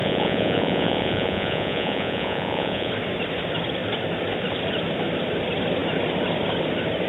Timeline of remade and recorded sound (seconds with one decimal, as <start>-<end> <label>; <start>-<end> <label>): 0.0-2.9 remade; 2.9-7.1 recorded